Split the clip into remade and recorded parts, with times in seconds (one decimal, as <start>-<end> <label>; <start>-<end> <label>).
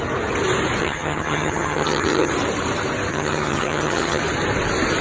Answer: 0.0-0.8 recorded; 0.8-2.3 remade; 2.3-3.1 recorded; 3.1-4.2 remade; 4.2-5.0 recorded